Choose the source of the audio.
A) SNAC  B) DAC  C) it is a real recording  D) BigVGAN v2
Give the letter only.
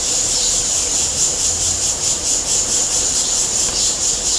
D